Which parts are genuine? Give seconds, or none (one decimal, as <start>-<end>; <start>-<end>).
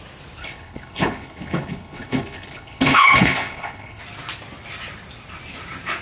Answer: 0.0-0.4; 4.0-6.0